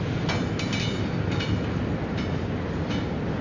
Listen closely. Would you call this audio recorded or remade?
recorded